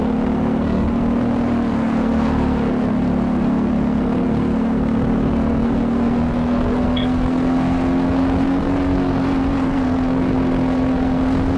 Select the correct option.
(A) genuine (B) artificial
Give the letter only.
B